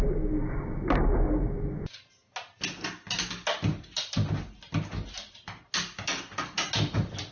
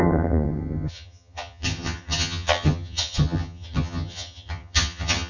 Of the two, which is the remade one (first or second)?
second